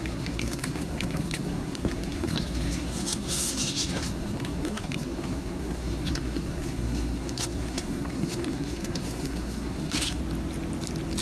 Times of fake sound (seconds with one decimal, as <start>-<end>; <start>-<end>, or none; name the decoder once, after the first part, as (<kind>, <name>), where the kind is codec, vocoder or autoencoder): 0.0-10.2 (codec, SNAC)